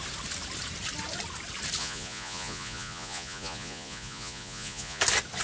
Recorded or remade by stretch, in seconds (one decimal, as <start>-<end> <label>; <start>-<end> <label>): 0.0-1.8 recorded; 1.8-5.0 remade; 5.0-5.4 recorded